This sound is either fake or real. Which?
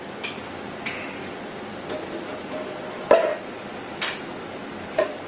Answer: real